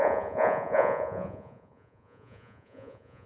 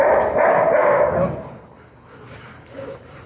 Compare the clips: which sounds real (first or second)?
second